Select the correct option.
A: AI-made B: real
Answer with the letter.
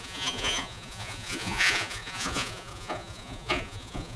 A